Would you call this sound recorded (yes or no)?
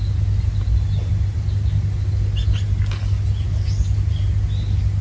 yes